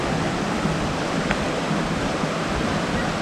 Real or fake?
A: real